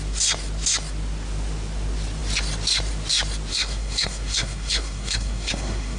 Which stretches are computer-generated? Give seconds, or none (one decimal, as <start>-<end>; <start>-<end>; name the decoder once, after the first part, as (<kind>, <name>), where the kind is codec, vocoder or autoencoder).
3.5-6.0 (codec, SNAC)

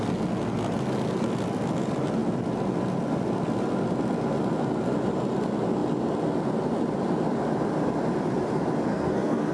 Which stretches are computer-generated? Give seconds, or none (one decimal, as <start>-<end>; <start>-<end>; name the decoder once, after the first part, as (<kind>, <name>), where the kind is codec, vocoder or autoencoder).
8.9-9.5 (codec, SNAC)

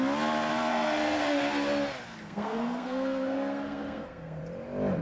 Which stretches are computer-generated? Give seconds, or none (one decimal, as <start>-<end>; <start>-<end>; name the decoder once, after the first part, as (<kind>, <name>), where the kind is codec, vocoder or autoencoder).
0.7-1.4 (codec, SNAC); 2.2-4.4

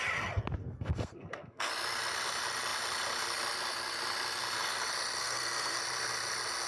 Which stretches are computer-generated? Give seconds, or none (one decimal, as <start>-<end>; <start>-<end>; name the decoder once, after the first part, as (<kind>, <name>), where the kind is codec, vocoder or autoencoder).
0.6-1.7 (codec, SNAC); 5.2-5.8

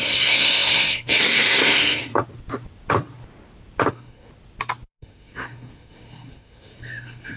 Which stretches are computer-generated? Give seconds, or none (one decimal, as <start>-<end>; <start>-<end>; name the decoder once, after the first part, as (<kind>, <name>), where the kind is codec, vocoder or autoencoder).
0.0-2.1 (codec, SNAC); 3.9-4.3; 4.9-7.4